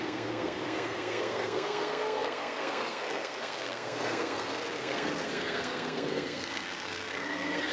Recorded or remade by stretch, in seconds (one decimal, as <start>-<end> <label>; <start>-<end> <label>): 0.0-7.7 remade